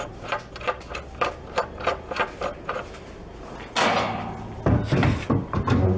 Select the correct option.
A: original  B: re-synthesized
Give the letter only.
A